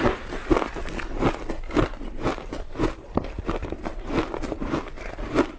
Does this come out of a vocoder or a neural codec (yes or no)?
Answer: no